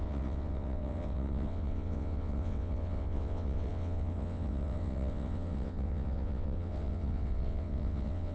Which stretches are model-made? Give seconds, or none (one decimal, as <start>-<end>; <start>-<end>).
0.0-8.3